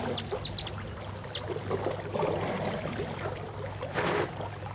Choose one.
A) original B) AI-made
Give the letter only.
A